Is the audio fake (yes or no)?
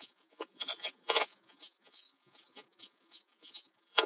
yes